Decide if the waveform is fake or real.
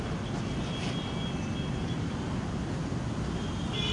real